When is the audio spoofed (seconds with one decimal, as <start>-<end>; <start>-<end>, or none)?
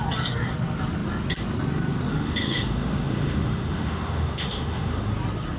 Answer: 2.1-5.1